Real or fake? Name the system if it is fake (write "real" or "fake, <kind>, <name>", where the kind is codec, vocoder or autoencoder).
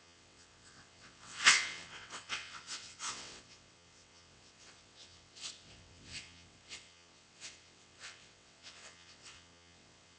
fake, vocoder, WaveNeXt